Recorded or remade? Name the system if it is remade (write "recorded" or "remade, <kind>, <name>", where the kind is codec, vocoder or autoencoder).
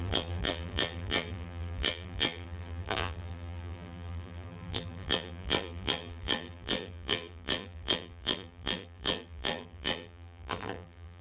remade, vocoder, BigVGAN v2